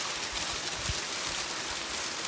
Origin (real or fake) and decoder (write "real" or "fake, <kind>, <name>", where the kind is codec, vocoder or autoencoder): real